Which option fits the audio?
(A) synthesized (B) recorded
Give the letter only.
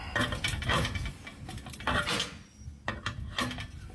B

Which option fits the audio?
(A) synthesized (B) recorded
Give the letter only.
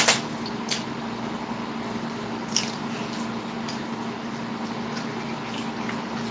B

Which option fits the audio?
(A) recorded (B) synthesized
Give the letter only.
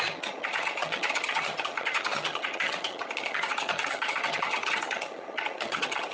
B